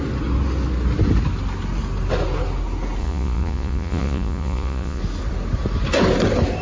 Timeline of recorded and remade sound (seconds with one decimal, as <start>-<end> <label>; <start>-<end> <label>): 0.0-3.0 recorded; 3.0-5.0 remade; 5.0-6.6 recorded